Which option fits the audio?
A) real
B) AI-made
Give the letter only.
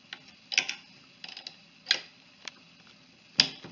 A